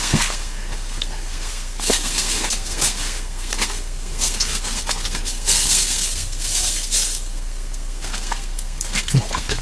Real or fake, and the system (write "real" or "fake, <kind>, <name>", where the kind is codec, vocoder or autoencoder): fake, codec, SNAC